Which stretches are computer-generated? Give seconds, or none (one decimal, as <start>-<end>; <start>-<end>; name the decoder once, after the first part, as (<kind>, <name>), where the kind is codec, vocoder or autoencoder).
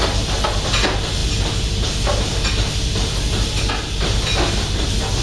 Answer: none